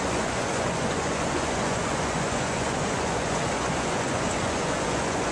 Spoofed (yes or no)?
yes